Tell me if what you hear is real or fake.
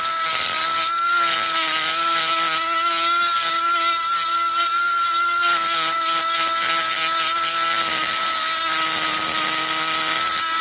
real